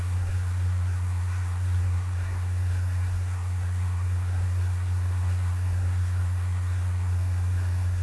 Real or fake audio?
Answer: fake